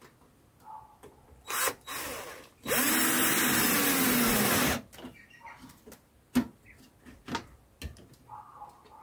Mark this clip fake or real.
real